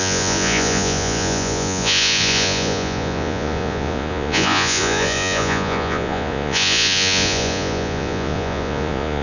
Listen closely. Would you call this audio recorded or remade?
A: remade